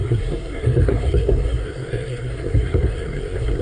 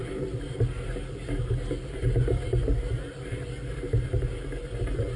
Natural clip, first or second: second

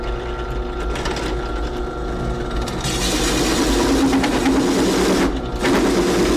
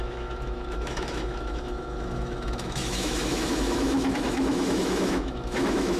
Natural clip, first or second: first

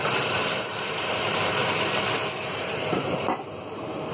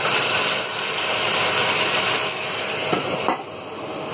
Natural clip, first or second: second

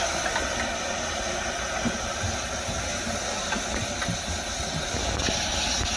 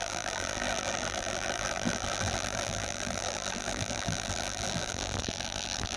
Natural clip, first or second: first